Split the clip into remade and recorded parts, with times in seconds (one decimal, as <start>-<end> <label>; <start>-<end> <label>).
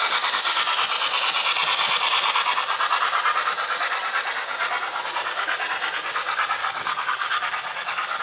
0.0-6.6 recorded; 6.6-8.2 remade